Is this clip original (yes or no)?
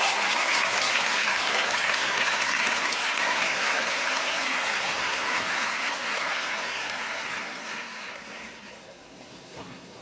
no